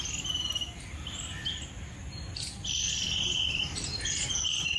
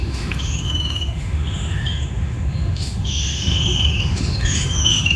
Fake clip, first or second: second